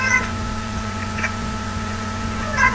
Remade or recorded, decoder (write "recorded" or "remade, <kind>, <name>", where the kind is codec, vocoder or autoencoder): remade, vocoder, Vocos